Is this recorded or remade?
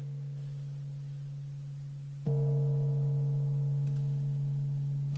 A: recorded